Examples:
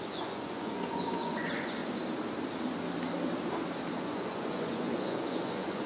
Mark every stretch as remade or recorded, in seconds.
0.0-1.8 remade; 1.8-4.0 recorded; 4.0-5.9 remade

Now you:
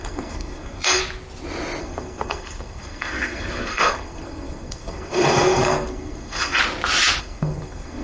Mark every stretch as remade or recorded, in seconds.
0.0-1.0 remade; 1.0-1.8 recorded; 1.8-6.6 remade; 6.6-7.2 recorded; 7.2-8.0 remade

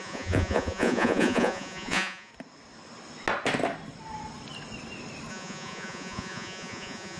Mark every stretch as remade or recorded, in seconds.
0.0-2.3 remade; 2.3-5.3 recorded; 5.3-7.2 remade

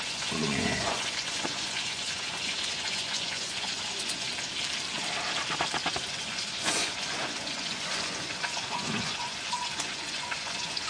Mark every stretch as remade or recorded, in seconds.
0.0-4.3 remade; 4.3-6.1 recorded; 6.1-10.9 remade

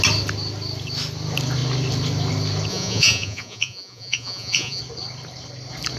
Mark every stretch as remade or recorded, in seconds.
0.0-2.7 recorded; 2.7-4.8 remade; 4.8-6.0 recorded